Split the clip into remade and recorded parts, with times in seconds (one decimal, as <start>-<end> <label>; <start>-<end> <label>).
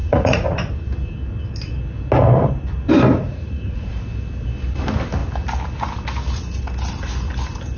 0.0-0.7 remade; 0.7-3.2 recorded; 3.2-3.9 remade; 3.9-7.8 recorded